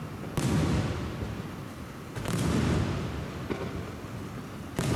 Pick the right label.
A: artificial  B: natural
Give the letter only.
B